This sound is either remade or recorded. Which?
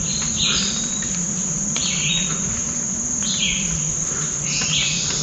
recorded